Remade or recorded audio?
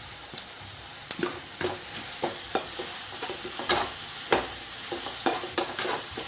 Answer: remade